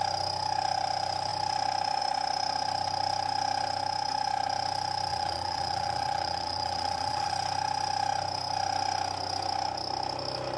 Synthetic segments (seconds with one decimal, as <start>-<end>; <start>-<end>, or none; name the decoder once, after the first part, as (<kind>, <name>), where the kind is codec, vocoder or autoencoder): 5.1-7.3 (vocoder, Vocos)